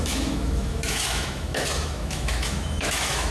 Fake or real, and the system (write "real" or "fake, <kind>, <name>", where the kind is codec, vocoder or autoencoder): fake, autoencoder, DAC-VAE